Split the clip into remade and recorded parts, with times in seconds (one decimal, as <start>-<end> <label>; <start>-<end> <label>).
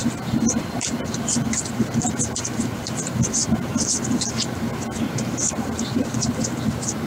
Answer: 0.0-3.4 remade; 3.4-5.5 recorded; 5.5-7.1 remade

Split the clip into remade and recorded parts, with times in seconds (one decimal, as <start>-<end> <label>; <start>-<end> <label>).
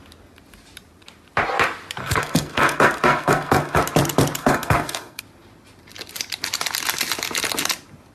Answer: 0.0-2.0 recorded; 2.0-3.8 remade; 3.8-4.4 recorded; 4.4-5.2 remade; 5.2-8.1 recorded